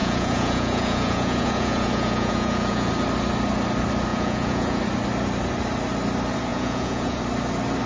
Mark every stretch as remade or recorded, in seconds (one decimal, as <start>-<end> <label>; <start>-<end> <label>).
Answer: 0.0-2.9 remade; 2.9-4.1 recorded; 4.1-4.8 remade; 4.8-6.5 recorded; 6.5-7.2 remade; 7.2-7.9 recorded